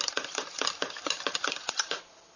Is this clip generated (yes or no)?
no